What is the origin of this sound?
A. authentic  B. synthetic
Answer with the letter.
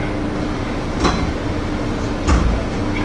A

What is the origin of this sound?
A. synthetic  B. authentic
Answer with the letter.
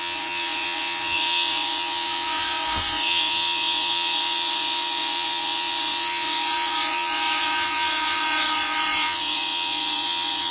A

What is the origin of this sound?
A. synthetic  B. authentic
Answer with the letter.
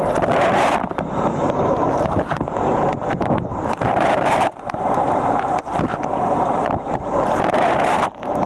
A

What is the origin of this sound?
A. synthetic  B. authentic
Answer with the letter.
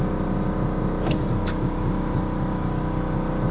B